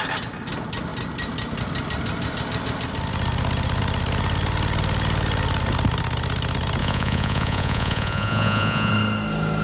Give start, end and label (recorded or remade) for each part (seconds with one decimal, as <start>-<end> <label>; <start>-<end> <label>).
0.0-6.8 recorded; 6.8-8.9 remade; 8.9-9.6 recorded